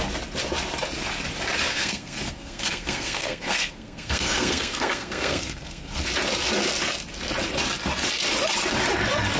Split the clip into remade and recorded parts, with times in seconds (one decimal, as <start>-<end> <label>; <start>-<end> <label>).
0.0-1.7 recorded; 1.7-6.0 remade; 6.0-9.4 recorded